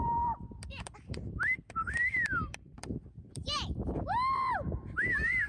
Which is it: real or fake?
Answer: fake